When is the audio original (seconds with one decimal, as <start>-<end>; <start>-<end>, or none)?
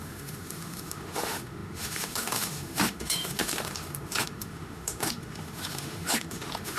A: none